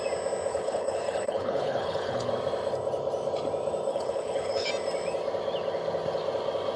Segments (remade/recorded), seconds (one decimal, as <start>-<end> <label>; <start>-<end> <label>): 0.0-0.5 recorded; 0.5-2.3 remade; 2.3-3.9 recorded; 3.9-4.7 remade; 4.7-6.8 recorded